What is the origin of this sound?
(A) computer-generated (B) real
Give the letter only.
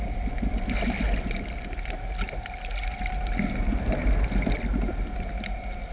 B